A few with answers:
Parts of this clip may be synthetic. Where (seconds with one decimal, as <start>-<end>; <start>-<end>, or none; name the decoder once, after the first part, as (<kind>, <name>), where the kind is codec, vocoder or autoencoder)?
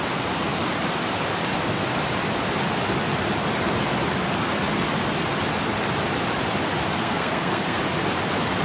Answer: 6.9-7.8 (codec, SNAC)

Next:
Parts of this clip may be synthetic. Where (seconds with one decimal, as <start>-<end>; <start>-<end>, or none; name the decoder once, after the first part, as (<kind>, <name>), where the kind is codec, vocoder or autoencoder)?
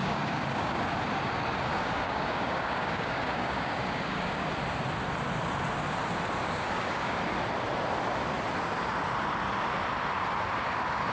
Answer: 0.0-0.8 (codec, DAC); 1.7-4.5; 6.4-7.2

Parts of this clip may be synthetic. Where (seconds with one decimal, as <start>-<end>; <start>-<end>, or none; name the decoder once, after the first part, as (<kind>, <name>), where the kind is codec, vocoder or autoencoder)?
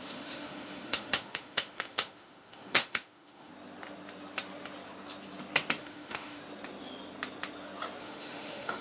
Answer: 0.0-3.5 (autoencoder, DAC-VAE); 5.8-6.4; 8.0-8.8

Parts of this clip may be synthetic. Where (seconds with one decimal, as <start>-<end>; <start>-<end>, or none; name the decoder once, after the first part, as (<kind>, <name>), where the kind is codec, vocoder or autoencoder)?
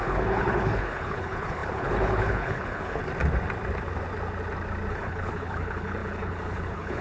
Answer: 0.0-3.0 (codec, HILCodec); 4.9-7.0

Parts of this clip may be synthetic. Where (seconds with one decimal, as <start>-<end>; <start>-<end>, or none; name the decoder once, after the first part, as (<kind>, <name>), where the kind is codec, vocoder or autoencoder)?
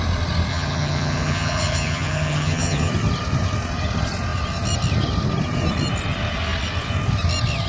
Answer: 0.5-2.9 (vocoder, HiFi-GAN)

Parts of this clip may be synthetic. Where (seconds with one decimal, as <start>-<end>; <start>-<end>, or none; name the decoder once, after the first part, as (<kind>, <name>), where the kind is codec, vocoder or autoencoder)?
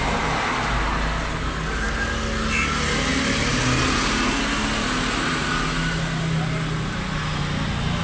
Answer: none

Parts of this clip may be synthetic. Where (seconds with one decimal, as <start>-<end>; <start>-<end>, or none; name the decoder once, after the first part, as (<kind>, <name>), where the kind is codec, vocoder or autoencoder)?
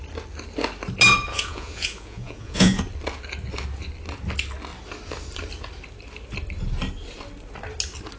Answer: 1.3-2.8 (vocoder, Vocos)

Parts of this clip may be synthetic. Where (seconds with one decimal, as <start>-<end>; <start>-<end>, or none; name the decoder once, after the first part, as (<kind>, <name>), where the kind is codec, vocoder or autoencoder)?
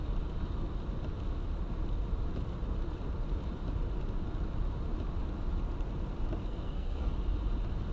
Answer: 6.4-7.1 (codec, SNAC)